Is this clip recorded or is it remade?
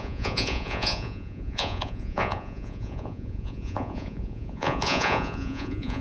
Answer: remade